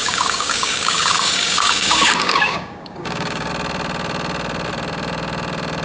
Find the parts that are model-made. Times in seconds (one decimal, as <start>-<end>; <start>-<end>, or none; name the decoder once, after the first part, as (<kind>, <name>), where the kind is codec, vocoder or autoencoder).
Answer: 0.0-3.5 (codec, DAC)